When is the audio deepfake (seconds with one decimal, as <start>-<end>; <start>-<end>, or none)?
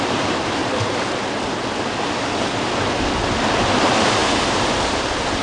0.0-0.6; 3.8-5.4